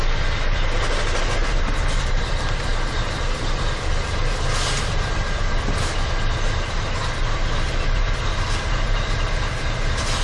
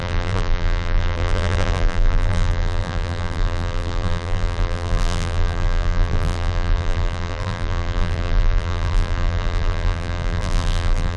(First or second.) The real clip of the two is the first